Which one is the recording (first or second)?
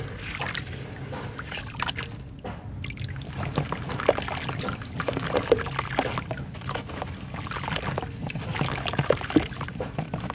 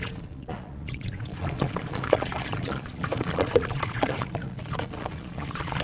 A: first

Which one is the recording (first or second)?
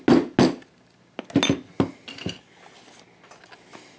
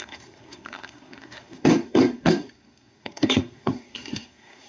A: first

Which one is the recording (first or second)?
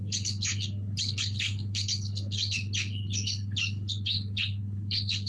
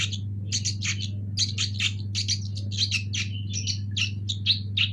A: second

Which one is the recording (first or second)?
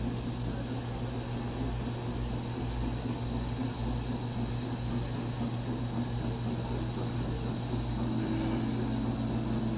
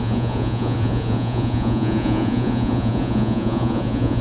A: first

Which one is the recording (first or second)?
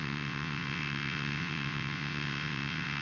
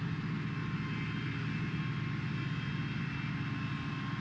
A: second